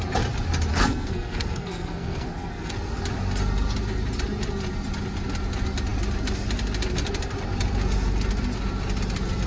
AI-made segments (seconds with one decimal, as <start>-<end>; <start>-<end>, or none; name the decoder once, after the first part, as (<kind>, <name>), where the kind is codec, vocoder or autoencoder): 0.7-2.7 (codec, SNAC)